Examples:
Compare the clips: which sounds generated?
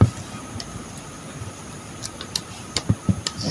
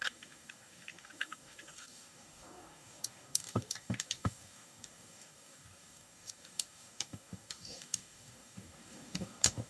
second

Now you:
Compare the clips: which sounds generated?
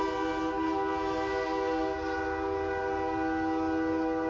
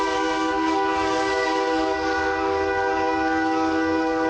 second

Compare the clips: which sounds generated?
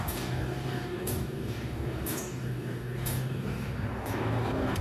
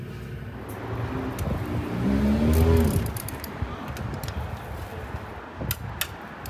first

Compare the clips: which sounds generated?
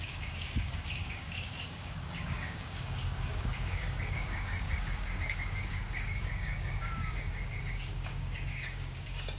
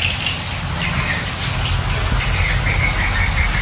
first